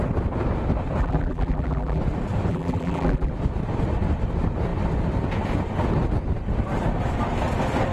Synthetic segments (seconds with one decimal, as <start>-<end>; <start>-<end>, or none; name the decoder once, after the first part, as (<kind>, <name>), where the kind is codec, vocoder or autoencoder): 1.0-2.0 (vocoder, BigVGAN v2); 2.5-3.3